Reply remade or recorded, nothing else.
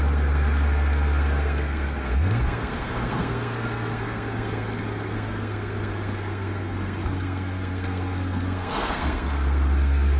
remade